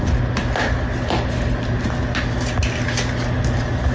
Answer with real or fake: real